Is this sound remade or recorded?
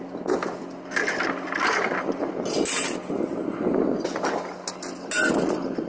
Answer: recorded